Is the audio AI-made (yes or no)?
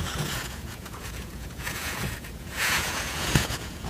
yes